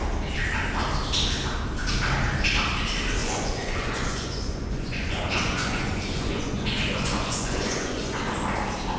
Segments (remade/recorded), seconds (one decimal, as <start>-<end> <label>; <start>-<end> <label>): 0.0-3.2 recorded; 3.2-8.2 remade; 8.2-9.0 recorded